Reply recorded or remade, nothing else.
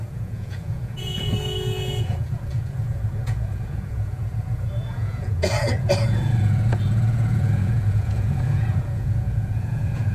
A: remade